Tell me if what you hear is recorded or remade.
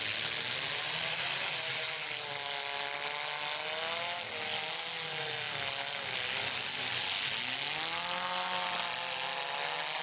recorded